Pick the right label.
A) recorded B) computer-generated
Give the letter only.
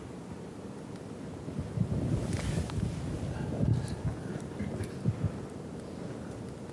A